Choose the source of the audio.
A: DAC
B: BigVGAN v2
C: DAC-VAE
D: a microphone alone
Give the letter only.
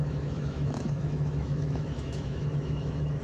C